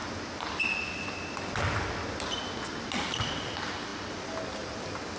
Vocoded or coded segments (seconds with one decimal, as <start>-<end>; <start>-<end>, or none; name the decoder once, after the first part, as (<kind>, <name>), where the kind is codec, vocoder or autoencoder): none